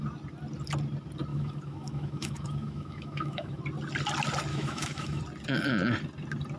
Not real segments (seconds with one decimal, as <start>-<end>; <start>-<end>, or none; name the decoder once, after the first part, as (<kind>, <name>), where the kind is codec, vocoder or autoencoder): 1.3-3.6 (autoencoder, DAC-VAE); 4.5-5.2